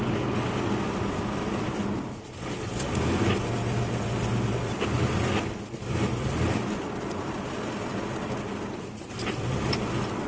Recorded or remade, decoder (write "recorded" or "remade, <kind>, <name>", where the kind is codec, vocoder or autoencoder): recorded